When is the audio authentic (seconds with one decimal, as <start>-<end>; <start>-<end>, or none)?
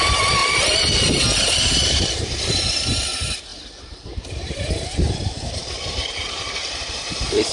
0.4-1.4; 3.5-4.3